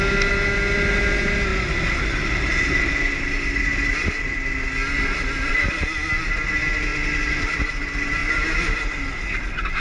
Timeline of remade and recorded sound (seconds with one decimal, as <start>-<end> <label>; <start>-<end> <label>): 0.0-8.2 recorded; 8.2-9.0 remade; 9.0-9.8 recorded